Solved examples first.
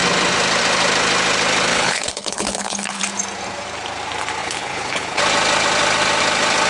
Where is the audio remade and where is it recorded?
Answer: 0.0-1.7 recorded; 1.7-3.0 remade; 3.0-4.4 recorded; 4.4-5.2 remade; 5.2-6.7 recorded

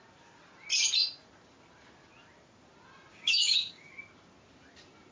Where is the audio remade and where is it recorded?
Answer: 0.0-3.1 recorded; 3.1-3.9 remade; 3.9-5.1 recorded

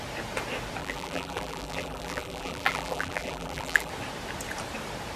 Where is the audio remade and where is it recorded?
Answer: 0.0-0.8 recorded; 0.8-3.9 remade; 3.9-5.2 recorded

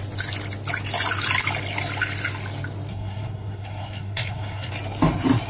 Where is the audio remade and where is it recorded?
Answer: 0.0-2.9 recorded; 2.9-4.7 remade; 4.7-5.5 recorded

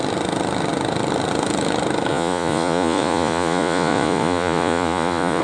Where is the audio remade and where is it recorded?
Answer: 0.0-2.1 recorded; 2.1-5.4 remade

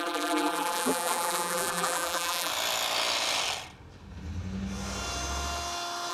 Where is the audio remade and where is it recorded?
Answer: 0.0-2.5 remade; 2.5-6.1 recorded